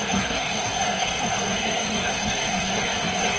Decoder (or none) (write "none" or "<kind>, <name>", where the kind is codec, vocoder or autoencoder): codec, SNAC